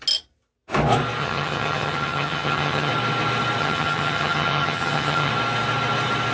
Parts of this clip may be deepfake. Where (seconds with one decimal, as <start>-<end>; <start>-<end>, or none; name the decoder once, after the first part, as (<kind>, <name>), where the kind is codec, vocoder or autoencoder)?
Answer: 1.2-2.9 (vocoder, HiFi-GAN); 3.6-5.3